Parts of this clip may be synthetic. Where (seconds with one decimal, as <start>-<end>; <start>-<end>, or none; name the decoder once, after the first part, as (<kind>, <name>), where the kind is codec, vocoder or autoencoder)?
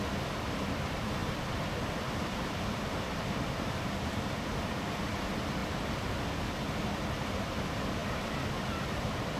1.2-4.7 (vocoder, BigVGAN v2)